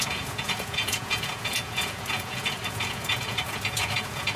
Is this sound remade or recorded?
remade